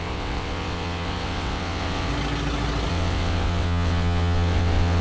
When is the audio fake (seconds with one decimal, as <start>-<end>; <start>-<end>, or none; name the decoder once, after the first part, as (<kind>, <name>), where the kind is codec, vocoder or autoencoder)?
0.0-2.1 (vocoder, WaveNeXt); 2.9-5.0

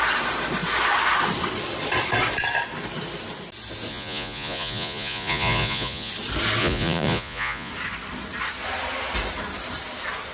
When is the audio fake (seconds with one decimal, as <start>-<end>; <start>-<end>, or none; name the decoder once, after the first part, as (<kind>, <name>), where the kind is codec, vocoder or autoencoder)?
3.9-6.1 (vocoder, Vocos); 6.6-7.7